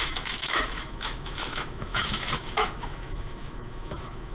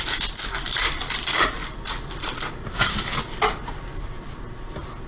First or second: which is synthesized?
first